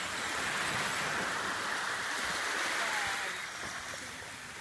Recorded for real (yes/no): yes